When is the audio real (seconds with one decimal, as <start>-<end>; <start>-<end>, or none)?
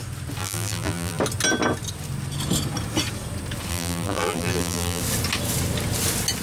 0.0-0.4; 1.2-3.7; 5.0-6.4